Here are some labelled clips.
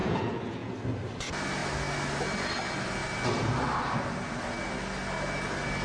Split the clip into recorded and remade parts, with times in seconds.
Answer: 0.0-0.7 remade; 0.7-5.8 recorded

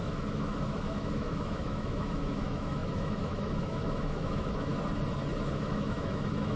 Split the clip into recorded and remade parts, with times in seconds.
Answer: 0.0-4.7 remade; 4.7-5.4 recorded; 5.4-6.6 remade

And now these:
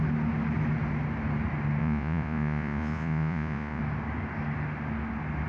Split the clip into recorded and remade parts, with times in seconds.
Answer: 0.0-1.8 recorded; 1.8-3.8 remade; 3.8-5.5 recorded

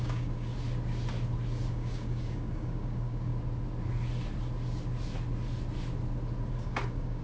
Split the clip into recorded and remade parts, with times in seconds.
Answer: 0.0-0.5 remade; 0.5-1.7 recorded; 1.7-3.3 remade; 3.3-6.5 recorded; 6.5-7.2 remade

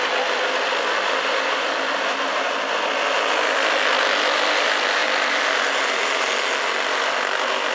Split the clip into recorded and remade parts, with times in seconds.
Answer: 0.0-7.7 recorded

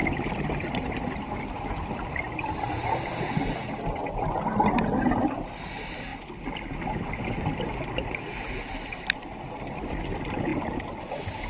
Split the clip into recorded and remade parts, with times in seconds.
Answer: 0.0-1.3 remade; 1.3-10.5 recorded; 10.5-11.5 remade

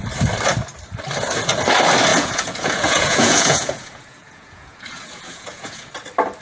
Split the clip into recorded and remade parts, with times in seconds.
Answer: 0.0-2.1 recorded; 2.1-5.9 remade; 5.9-6.4 recorded

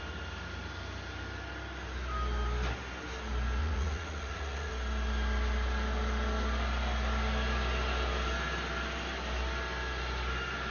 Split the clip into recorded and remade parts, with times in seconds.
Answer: 0.0-3.6 recorded; 3.6-4.7 remade; 4.7-10.7 recorded